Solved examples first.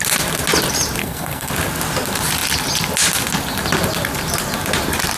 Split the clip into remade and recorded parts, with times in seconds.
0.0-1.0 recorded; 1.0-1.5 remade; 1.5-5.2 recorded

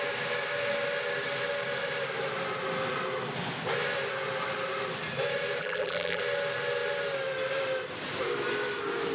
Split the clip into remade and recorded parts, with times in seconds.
0.0-5.6 recorded; 5.6-6.2 remade; 6.2-9.1 recorded

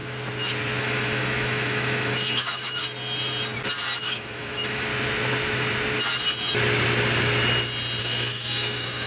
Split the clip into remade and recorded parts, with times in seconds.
0.0-0.8 recorded; 0.8-2.8 remade; 2.8-4.0 recorded; 4.0-4.9 remade; 4.9-8.0 recorded; 8.0-9.1 remade